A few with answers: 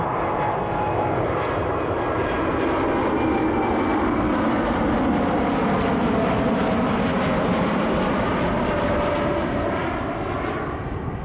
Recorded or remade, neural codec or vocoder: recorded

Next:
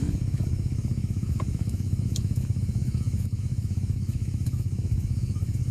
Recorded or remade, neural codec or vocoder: remade, autoencoder, DAC-VAE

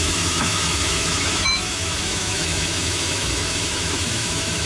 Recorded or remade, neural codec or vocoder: remade, autoencoder, DAC-VAE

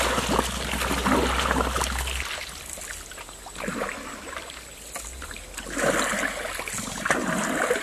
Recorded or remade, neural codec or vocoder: recorded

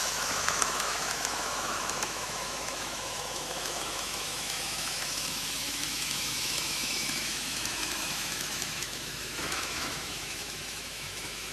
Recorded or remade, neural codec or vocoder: remade, autoencoder, DAC-VAE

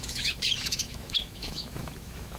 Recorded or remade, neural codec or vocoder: remade, autoencoder, DAC-VAE